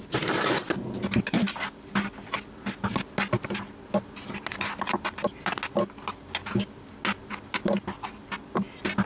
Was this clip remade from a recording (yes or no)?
no